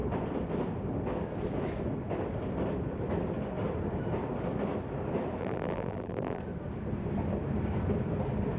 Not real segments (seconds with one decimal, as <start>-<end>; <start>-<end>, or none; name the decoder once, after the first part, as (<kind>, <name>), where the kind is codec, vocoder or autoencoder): 5.4-6.4 (vocoder, BigVGAN v2)